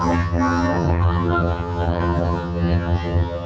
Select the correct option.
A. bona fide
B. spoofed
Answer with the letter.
B